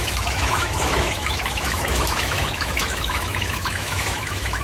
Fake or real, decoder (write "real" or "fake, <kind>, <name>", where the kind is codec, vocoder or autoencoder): fake, autoencoder, DAC-VAE